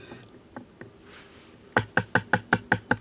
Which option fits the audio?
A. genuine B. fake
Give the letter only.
A